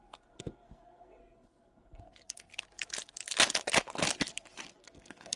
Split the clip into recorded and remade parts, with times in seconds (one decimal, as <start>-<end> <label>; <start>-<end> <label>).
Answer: 0.0-2.5 remade; 2.5-4.8 recorded; 4.8-5.4 remade